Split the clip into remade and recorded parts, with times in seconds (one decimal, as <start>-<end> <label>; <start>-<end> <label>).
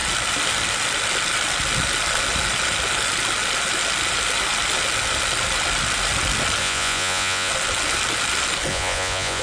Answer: 0.0-6.6 recorded; 6.6-7.5 remade; 7.5-8.7 recorded; 8.7-9.4 remade